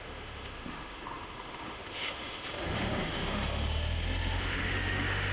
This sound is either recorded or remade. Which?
remade